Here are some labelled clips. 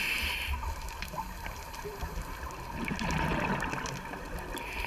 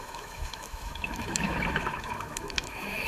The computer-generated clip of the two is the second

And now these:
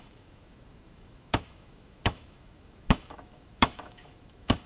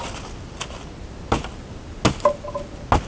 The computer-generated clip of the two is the first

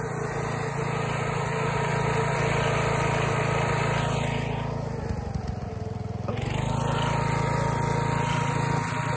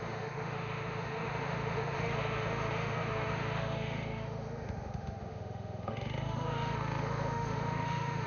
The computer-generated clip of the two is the second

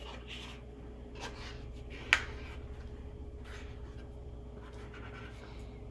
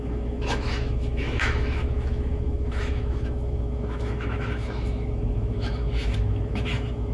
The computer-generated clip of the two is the second